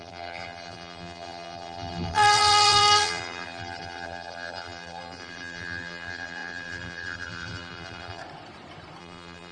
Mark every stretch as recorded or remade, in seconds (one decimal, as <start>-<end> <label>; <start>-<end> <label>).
0.0-8.2 remade; 8.2-9.0 recorded; 9.0-9.5 remade